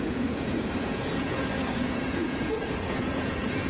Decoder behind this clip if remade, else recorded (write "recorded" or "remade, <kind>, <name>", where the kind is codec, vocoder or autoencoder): remade, vocoder, Vocos